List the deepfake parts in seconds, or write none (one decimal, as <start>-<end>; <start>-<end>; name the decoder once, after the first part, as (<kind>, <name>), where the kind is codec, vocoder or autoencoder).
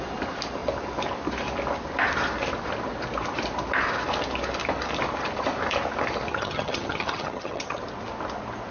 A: 6.3-7.8 (vocoder, HiFi-GAN)